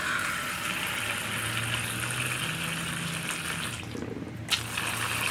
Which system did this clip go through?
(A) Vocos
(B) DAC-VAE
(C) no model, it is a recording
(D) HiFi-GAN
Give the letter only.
C